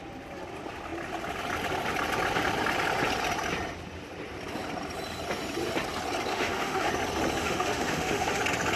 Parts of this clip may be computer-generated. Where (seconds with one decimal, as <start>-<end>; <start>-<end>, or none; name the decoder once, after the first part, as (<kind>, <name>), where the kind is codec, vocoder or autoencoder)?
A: 6.3-6.9 (autoencoder, DAC-VAE); 7.4-8.4